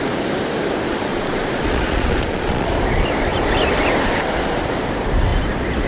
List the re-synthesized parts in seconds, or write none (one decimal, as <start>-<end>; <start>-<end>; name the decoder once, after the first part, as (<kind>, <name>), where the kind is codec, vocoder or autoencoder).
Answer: 1.1-2.7 (vocoder, Vocos)